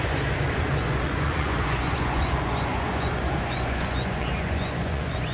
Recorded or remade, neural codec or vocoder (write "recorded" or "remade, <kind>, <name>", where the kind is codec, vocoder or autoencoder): remade, vocoder, Vocos